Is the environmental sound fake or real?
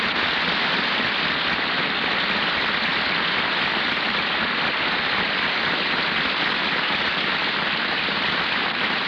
real